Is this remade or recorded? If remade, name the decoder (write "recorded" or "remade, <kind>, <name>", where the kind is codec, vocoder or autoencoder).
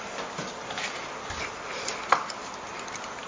remade, vocoder, BigVGAN v2